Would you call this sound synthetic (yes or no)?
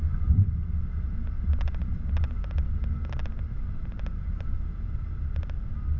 no